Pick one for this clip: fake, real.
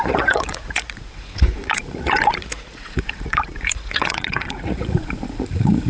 fake